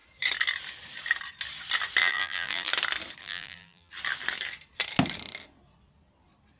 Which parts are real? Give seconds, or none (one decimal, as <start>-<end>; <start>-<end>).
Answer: 0.0-2.0; 2.7-3.2; 3.9-6.6